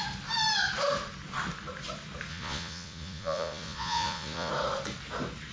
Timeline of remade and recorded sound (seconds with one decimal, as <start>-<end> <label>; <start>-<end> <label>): 0.0-2.3 recorded; 2.3-4.5 remade; 4.5-5.5 recorded